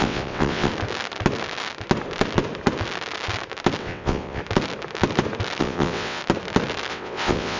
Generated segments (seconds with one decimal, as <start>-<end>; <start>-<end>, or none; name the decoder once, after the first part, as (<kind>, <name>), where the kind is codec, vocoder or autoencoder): 0.0-0.7 (vocoder, WaveNeXt); 3.8-4.4; 5.6-6.2; 6.9-7.6